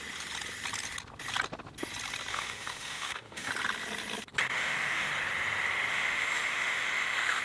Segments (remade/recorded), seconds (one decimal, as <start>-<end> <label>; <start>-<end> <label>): 0.0-2.3 recorded; 2.3-3.5 remade; 3.5-4.6 recorded; 4.6-5.1 remade; 5.1-5.9 recorded; 5.9-7.4 remade